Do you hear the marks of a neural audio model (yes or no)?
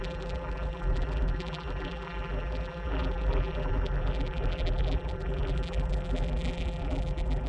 yes